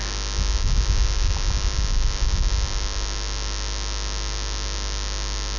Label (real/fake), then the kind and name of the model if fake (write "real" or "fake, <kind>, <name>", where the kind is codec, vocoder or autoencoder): real